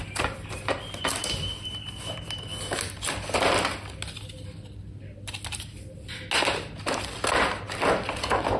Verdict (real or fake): real